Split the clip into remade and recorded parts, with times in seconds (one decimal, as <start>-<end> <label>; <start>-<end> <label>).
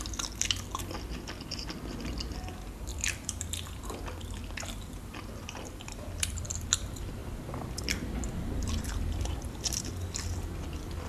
0.0-2.9 recorded; 2.9-6.7 remade; 6.7-7.2 recorded; 7.2-7.8 remade; 7.8-8.4 recorded; 8.4-9.9 remade; 9.9-11.1 recorded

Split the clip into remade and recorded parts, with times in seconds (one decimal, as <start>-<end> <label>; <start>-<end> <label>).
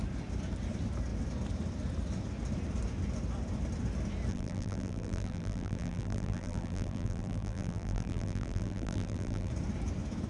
0.0-4.3 recorded; 4.3-9.5 remade; 9.5-10.3 recorded